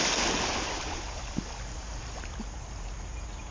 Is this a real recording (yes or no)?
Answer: yes